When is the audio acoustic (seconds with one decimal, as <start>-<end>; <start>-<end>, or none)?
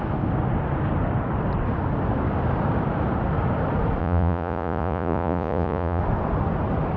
0.0-4.0; 6.0-7.0